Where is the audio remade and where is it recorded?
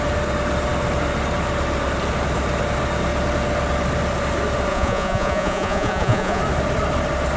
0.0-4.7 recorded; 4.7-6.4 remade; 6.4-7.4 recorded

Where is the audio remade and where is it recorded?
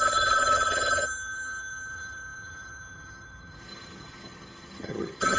0.0-5.4 remade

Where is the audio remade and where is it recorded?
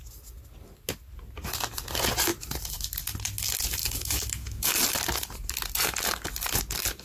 0.0-3.8 recorded; 3.8-4.7 remade; 4.7-7.0 recorded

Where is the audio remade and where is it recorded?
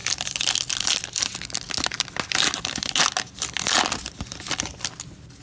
0.0-5.4 recorded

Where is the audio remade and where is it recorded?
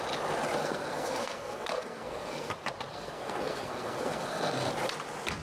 0.0-0.6 recorded; 0.6-2.5 remade; 2.5-2.9 recorded; 2.9-4.7 remade; 4.7-5.4 recorded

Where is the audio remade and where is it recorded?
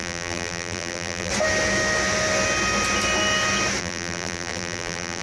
0.0-1.3 remade; 1.3-3.8 recorded; 3.8-5.2 remade